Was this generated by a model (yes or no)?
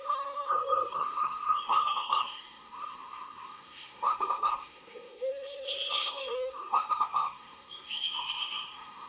yes